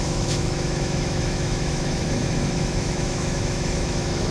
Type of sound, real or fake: fake